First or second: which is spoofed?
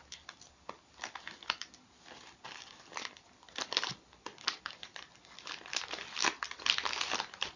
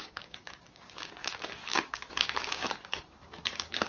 second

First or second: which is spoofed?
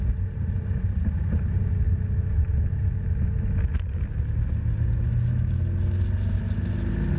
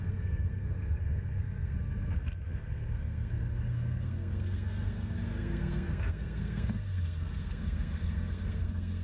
second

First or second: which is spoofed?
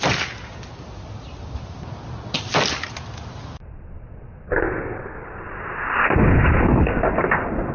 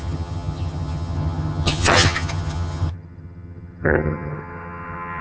second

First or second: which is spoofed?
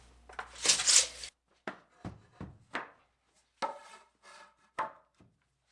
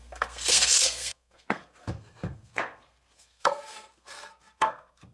second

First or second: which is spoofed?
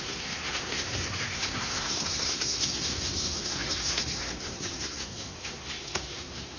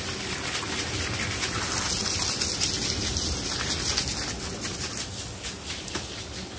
first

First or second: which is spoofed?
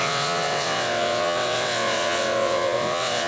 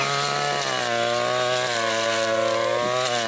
first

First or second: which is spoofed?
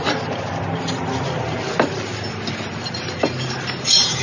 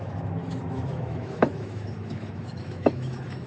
second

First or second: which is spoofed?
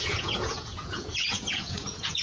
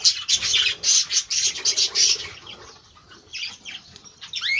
first